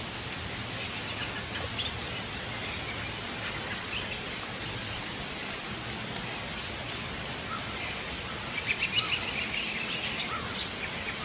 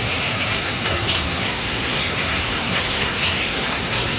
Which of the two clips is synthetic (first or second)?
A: second